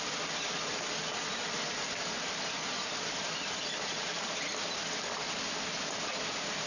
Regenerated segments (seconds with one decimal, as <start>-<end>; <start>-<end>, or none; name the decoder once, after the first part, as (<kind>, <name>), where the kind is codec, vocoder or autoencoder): none